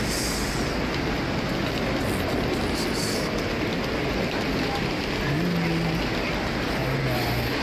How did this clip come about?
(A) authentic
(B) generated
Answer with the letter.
A